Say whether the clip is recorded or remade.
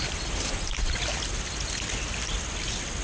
recorded